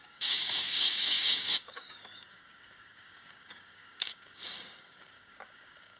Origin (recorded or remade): remade